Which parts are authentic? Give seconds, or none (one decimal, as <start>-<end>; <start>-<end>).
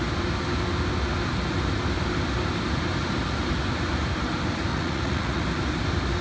0.0-4.7; 5.4-6.2